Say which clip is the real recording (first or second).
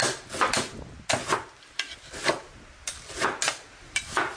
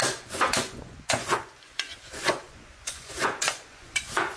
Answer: first